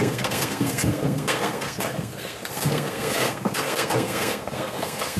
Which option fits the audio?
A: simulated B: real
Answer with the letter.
A